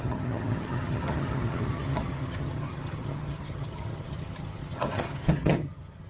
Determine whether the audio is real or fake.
fake